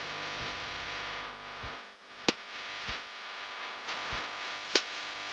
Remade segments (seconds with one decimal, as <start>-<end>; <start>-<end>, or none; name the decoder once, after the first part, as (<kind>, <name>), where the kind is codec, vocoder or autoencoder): none